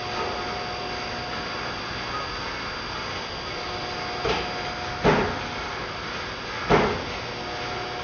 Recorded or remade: recorded